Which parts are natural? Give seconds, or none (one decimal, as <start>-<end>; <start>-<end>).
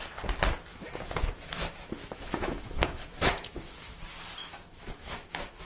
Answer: 0.0-0.7; 4.0-4.4